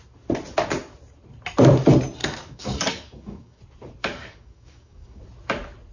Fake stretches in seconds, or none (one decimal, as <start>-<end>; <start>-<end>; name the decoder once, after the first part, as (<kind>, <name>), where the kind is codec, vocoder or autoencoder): 2.2-3.6 (codec, DAC); 4.0-5.2